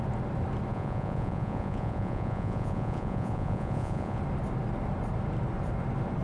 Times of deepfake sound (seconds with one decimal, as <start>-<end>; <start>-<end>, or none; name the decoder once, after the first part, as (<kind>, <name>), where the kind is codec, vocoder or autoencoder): 0.7-4.2 (vocoder, Vocos)